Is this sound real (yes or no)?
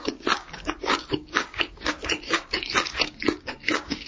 no